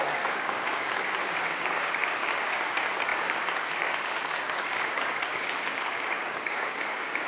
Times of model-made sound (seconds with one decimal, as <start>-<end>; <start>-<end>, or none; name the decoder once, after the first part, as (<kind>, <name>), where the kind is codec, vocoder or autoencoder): 0.0-7.3 (codec, DAC)